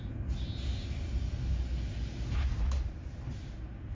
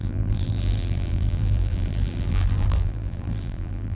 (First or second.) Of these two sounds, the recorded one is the first